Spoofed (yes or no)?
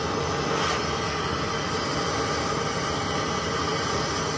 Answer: no